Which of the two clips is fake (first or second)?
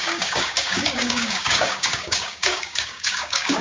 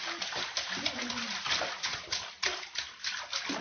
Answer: first